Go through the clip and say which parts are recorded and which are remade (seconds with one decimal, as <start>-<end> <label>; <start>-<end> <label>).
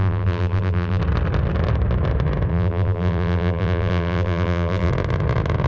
0.0-1.0 remade; 1.0-2.5 recorded; 2.5-4.9 remade; 4.9-5.7 recorded